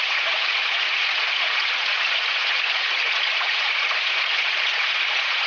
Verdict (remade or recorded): remade